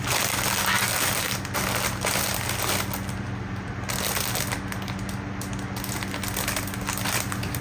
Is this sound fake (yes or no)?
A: no